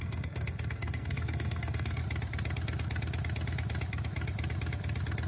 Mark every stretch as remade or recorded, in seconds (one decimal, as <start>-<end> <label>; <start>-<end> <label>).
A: 0.0-2.0 remade; 2.0-5.3 recorded